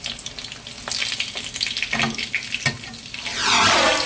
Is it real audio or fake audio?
real